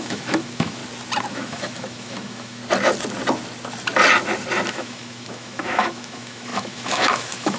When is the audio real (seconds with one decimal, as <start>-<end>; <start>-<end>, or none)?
0.8-1.3; 2.6-4.7